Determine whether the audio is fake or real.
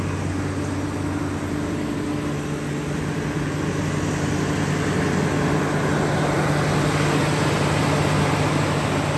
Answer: real